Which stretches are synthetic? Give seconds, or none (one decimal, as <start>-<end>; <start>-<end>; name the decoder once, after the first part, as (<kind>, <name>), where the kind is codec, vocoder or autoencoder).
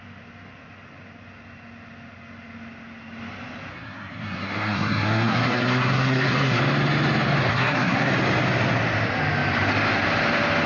3.7-6.6 (codec, SNAC); 7.5-8.1